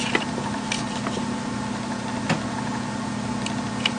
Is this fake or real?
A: real